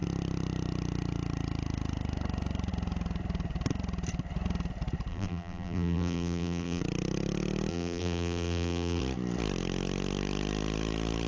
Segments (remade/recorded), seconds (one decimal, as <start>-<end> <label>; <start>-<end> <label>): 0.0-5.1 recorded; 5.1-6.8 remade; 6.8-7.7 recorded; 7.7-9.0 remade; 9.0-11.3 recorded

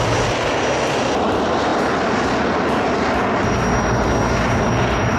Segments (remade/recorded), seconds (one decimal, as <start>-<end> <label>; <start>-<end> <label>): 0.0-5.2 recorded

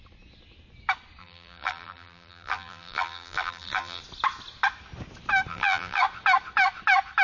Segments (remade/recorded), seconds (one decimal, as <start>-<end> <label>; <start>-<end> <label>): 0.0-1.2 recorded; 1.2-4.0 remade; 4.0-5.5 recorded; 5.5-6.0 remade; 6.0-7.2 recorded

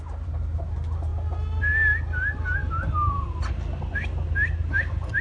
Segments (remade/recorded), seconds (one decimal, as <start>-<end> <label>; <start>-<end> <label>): 0.0-2.6 recorded; 2.6-3.5 remade; 3.5-5.2 recorded

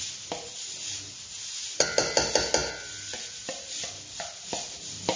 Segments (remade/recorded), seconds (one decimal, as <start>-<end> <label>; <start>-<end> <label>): 0.0-5.2 recorded

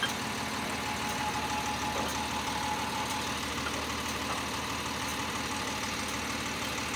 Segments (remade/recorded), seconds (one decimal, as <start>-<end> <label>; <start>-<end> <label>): 0.0-7.0 recorded